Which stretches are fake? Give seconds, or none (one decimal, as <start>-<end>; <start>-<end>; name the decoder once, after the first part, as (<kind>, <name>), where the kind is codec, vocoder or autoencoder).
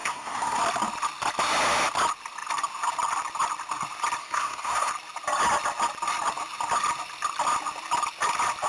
0.0-0.6 (codec, SNAC); 4.2-4.9